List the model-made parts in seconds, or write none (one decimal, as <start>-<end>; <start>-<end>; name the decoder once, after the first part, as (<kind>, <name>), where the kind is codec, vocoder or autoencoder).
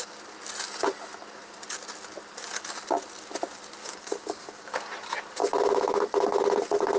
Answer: 3.8-4.8 (codec, DAC)